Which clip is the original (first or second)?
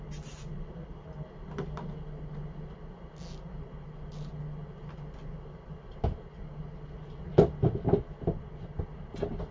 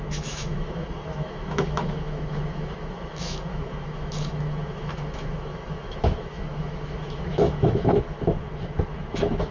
first